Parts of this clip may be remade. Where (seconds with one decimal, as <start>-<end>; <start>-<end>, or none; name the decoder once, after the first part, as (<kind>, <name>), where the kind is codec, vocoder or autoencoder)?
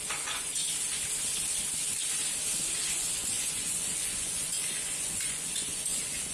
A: 0.0-0.6 (vocoder, Vocos); 2.9-6.3